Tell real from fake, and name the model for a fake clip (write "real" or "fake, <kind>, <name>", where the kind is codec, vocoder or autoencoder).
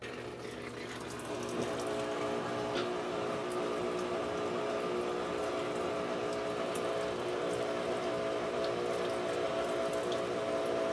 real